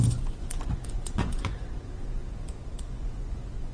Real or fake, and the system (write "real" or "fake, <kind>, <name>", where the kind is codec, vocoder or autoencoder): fake, vocoder, Vocos